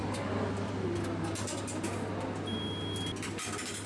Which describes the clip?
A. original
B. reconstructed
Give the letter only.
A